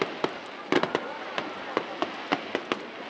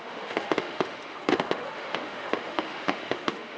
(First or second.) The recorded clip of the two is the first